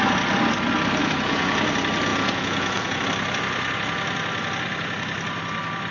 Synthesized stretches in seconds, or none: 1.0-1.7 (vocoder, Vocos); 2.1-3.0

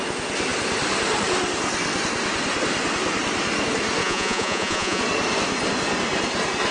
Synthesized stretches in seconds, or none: 4.0-5.0 (vocoder, Vocos)

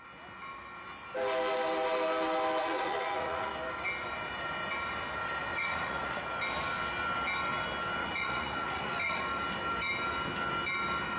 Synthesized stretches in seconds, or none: 2.6-3.5 (vocoder, Vocos); 5.5-6.2; 8.0-9.2

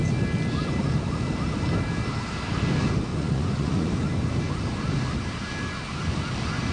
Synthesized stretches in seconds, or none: 3.1-3.9 (vocoder, Vocos)

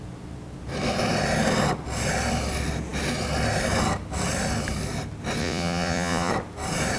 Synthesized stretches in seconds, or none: 5.4-6.3 (vocoder, Vocos)